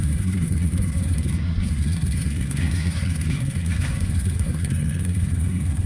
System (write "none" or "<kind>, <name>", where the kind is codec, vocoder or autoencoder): codec, SNAC